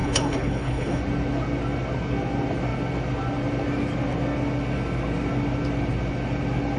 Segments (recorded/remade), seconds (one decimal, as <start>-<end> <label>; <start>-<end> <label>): 0.0-1.0 remade; 1.0-6.8 recorded